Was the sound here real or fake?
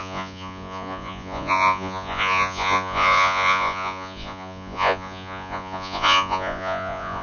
fake